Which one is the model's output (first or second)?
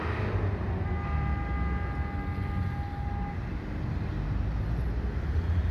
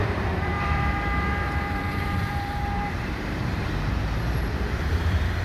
second